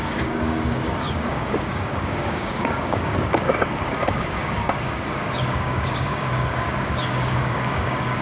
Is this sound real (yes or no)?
no